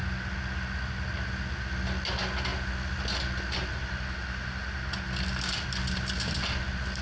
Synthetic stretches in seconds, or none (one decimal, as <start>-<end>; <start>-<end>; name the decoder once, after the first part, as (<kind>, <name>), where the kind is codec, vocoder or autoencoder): none